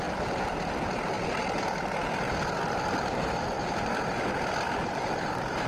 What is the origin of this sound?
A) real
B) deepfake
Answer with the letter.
A